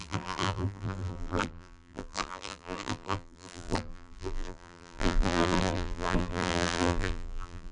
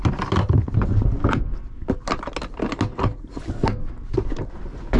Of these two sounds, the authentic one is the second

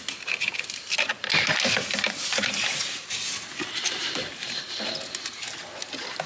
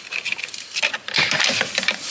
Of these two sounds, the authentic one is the first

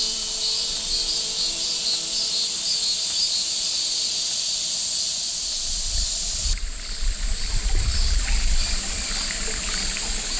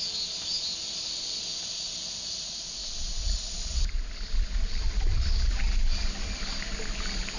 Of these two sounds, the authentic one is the second